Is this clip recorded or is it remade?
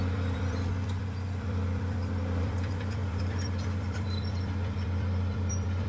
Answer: remade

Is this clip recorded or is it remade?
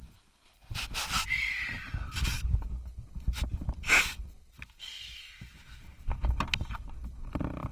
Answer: recorded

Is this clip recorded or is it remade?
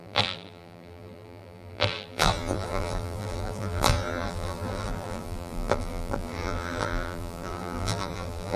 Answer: remade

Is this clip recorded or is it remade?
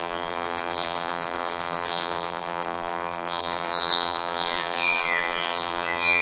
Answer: remade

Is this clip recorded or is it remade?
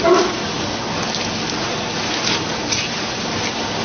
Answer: recorded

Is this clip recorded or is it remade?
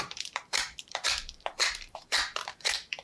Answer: remade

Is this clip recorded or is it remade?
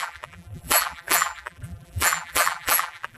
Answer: remade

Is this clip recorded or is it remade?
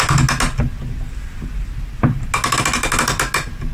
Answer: recorded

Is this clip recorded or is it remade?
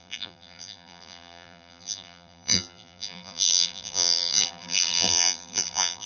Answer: remade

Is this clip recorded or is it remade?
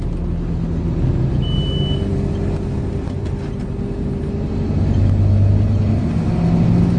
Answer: recorded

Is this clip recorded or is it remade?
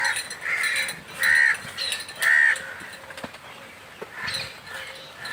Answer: recorded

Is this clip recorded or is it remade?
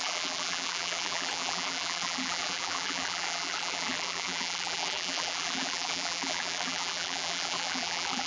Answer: remade